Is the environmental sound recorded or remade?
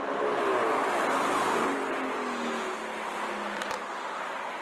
recorded